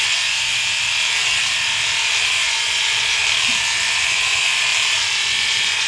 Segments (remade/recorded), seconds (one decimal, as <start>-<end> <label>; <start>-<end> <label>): 0.0-0.5 remade; 0.5-2.3 recorded; 2.3-3.2 remade; 3.2-3.8 recorded; 3.8-4.7 remade; 4.7-5.3 recorded; 5.3-5.9 remade